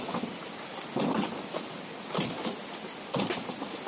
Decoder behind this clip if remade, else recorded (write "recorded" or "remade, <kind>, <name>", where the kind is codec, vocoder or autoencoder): recorded